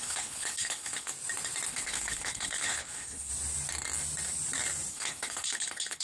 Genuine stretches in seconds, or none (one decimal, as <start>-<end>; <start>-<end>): 1.1-1.7; 3.3-4.9